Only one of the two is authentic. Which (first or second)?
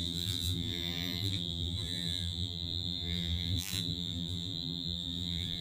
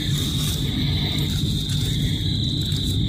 second